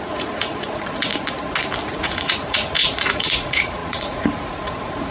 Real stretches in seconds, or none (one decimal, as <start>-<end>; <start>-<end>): 1.1-1.8